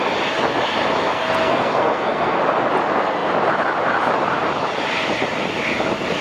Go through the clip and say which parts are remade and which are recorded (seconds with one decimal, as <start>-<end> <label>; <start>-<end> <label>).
0.0-1.1 recorded; 1.1-2.4 remade; 2.4-6.2 recorded